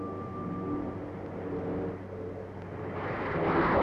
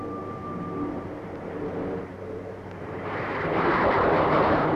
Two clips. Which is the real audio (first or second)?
first